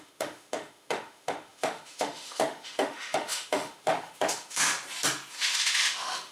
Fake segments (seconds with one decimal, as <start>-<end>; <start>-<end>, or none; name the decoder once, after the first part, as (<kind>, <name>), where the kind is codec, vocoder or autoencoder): 0.0-4.7 (autoencoder, DAC-VAE); 5.3-6.3

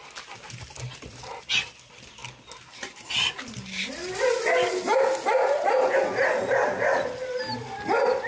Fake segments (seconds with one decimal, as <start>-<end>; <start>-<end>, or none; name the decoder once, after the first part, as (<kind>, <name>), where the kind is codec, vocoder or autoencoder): none

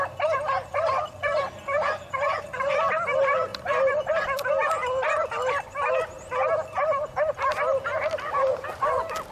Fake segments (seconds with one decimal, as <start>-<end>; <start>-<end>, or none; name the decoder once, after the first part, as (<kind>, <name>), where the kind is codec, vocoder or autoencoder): none